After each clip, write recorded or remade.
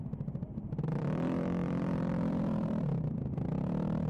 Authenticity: remade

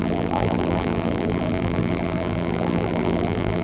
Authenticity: remade